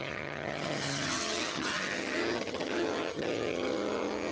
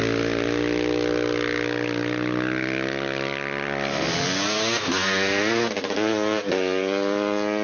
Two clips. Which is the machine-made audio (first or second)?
first